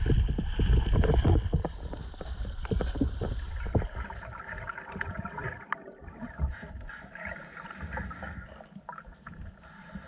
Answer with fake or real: real